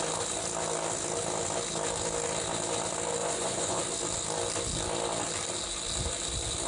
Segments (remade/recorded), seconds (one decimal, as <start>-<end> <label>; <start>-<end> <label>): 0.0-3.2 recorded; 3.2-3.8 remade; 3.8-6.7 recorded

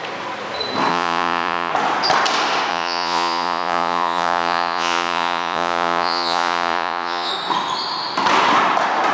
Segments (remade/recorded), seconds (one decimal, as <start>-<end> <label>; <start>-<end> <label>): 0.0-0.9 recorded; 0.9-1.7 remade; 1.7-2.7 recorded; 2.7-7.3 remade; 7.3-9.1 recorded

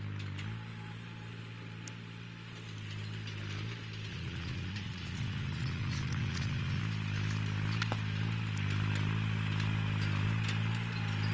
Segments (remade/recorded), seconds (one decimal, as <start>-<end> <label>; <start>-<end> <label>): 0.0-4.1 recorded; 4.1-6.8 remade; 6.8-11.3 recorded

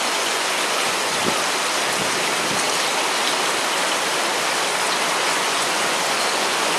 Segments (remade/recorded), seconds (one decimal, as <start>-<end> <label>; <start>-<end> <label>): 0.0-1.2 remade; 1.2-5.2 recorded; 5.2-6.8 remade

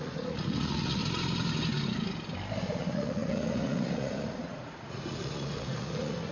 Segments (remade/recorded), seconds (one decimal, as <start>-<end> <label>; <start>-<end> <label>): 0.0-1.0 remade; 1.0-2.8 recorded; 2.8-6.3 remade

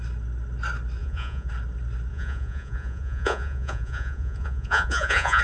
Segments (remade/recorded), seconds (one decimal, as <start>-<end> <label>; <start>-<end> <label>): 0.0-1.0 recorded; 1.0-1.5 remade; 1.5-2.1 recorded; 2.1-5.4 remade

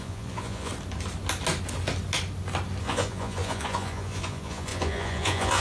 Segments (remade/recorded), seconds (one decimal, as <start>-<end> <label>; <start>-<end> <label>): 0.0-0.7 remade; 0.7-2.8 recorded; 2.8-5.6 remade

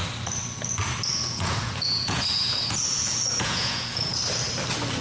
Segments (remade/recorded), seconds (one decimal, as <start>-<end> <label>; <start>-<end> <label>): 0.0-1.2 recorded; 1.2-4.2 remade; 4.2-5.0 recorded